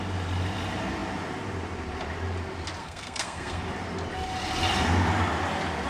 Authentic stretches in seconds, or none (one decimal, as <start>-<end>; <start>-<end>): 0.0-2.8; 3.6-5.9